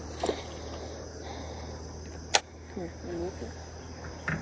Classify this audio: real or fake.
real